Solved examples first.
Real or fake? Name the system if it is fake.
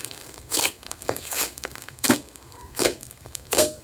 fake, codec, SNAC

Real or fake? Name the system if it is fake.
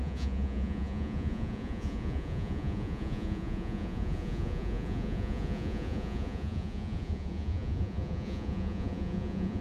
fake, vocoder, Vocos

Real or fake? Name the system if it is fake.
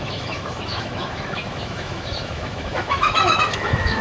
fake, autoencoder, DAC-VAE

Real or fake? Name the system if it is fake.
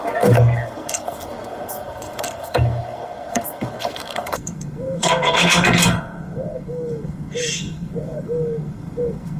fake, codec, SNAC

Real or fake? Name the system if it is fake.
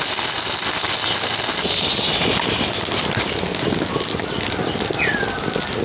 real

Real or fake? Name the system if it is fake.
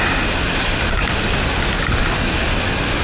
real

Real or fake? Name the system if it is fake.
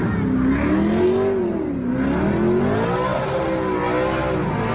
real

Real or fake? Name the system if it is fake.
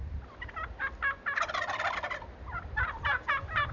real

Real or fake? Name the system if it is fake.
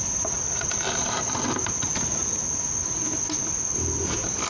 real